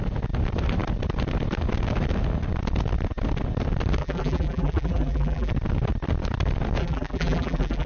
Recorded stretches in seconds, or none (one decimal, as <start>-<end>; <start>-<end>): 0.0-4.0; 5.5-6.8